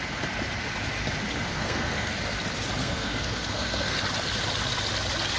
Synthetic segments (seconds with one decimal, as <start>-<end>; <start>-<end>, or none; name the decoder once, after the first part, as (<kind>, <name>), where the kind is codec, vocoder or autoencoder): 1.5-2.1 (codec, SNAC); 2.8-4.0